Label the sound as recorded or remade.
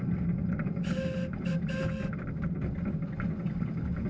recorded